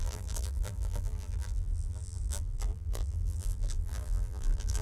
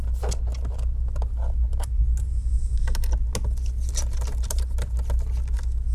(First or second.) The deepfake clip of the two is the first